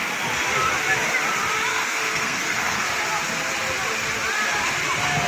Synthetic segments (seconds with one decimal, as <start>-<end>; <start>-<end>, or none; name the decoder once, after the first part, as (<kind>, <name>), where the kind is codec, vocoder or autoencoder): 1.7-3.0 (codec, SNAC)

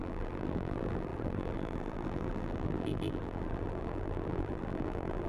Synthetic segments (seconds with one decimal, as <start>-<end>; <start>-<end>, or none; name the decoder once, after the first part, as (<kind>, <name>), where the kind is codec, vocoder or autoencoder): 0.0-5.3 (vocoder, BigVGAN v2)

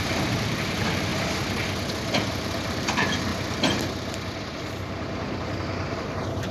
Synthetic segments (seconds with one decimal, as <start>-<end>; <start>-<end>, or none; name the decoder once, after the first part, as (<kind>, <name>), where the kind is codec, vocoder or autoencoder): 0.0-1.1 (vocoder, BigVGAN v2); 2.3-3.3; 4.7-6.5

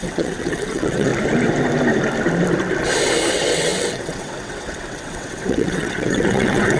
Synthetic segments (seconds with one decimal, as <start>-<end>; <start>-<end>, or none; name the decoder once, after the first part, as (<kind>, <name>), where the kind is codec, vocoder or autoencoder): 0.0-1.1 (vocoder, WaveNeXt); 3.3-6.8

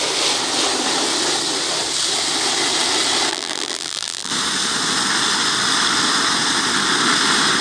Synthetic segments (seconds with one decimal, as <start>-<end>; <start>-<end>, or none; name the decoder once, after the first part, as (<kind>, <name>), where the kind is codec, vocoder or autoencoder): 3.3-4.3 (vocoder, BigVGAN v2)

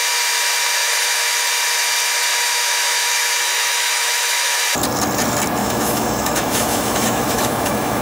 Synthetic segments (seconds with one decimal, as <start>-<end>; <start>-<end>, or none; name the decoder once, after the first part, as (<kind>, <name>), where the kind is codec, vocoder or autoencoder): 0.8-1.4 (autoencoder, DAC-VAE); 2.3-4.6; 5.6-8.0

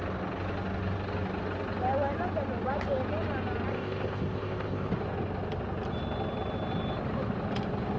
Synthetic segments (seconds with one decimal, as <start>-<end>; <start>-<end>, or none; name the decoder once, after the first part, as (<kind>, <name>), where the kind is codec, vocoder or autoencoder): 3.7-4.9 (codec, ZipCodec)

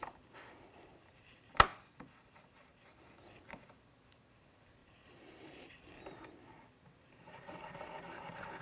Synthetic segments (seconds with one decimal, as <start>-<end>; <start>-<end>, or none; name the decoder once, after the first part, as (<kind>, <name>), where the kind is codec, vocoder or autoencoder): none